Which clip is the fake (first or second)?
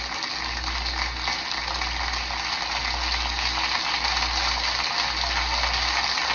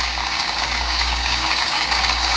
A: second